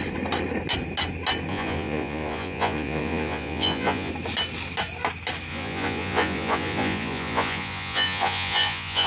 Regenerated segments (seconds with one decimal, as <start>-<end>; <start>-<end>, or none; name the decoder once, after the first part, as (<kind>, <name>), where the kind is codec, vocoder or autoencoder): 1.5-4.1 (vocoder, Vocos); 5.5-9.1

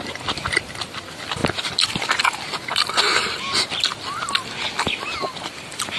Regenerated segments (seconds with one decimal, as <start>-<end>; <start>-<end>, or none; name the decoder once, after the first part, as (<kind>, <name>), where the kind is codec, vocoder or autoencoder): none

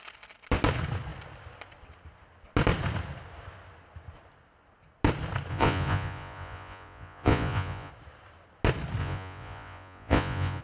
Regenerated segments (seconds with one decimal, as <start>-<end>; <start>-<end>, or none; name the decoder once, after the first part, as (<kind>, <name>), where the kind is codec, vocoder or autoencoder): 5.5-7.9 (vocoder, Vocos); 9.0-10.6

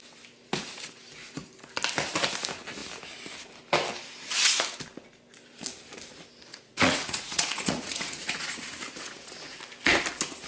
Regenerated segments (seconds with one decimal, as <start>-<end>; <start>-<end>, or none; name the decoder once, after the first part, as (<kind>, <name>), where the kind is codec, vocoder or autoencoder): 6.5-9.6 (vocoder, Vocos)

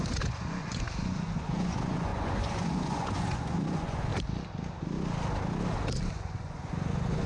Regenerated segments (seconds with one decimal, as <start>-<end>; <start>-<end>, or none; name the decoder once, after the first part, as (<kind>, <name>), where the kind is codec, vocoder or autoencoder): 0.0-4.1 (vocoder, Vocos); 6.1-7.3

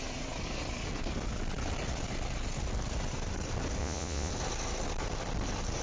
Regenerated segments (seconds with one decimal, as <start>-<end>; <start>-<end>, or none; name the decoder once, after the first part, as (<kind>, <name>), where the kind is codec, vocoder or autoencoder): 3.8-4.3 (vocoder, Vocos)

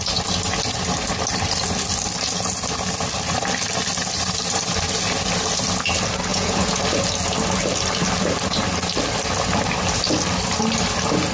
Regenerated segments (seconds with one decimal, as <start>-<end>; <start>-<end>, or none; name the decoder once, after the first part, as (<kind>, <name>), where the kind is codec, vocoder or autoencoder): 6.3-6.8 (vocoder, Vocos)